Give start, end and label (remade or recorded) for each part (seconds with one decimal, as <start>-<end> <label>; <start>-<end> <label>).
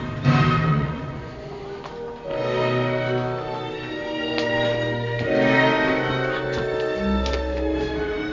0.0-0.7 recorded; 0.7-1.6 remade; 1.6-8.3 recorded